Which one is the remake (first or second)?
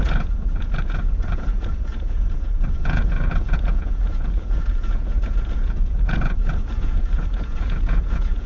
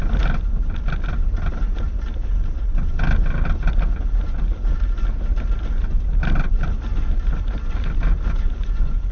first